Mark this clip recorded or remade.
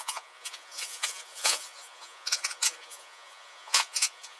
remade